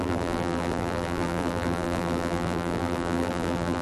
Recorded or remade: remade